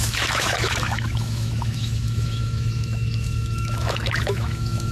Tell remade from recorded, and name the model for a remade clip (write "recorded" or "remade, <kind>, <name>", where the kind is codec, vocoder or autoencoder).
remade, autoencoder, DAC-VAE